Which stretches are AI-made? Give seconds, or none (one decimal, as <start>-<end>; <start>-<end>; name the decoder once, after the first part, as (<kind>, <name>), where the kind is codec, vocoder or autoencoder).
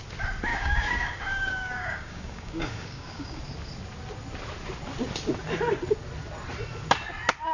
0.5-3.4 (codec, DAC)